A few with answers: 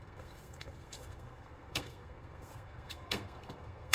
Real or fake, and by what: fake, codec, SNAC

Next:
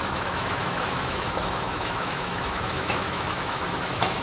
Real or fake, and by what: fake, autoencoder, DAC-VAE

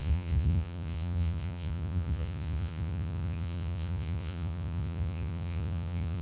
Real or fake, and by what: fake, vocoder, Vocos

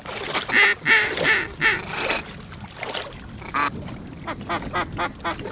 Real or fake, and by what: real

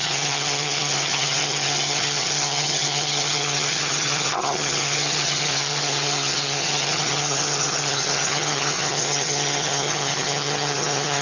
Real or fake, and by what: fake, vocoder, HiFi-GAN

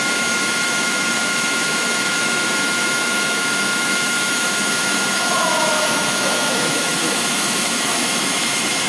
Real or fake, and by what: fake, autoencoder, DAC-VAE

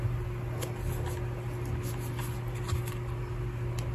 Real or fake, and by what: real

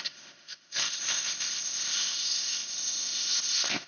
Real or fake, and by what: fake, codec, ZipCodec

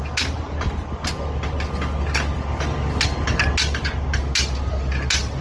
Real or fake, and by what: real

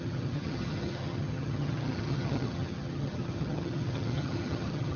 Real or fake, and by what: fake, vocoder, HiFi-GAN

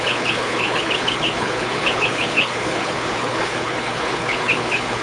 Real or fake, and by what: fake, codec, HILCodec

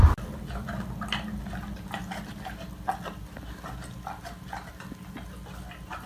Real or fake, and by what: real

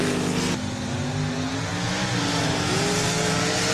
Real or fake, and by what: real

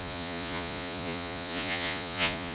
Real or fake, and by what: fake, vocoder, Vocos